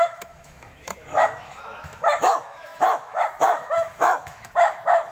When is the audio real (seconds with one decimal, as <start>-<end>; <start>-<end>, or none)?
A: none